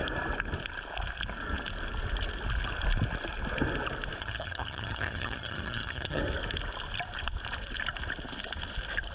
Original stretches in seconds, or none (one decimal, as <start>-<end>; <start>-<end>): 0.0-4.2; 6.2-9.1